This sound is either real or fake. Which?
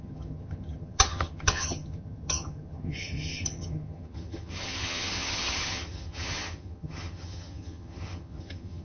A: fake